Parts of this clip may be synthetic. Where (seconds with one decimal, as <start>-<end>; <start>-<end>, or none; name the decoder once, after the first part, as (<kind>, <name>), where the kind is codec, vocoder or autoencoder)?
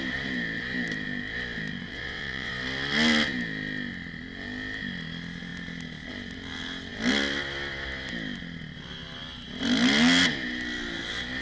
1.9-2.5 (vocoder, WaveNeXt)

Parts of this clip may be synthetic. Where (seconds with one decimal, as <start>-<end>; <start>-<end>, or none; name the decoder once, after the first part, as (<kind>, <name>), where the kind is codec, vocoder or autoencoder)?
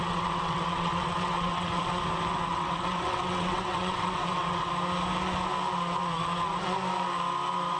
0.0-2.0 (vocoder, WaveNeXt); 2.5-4.7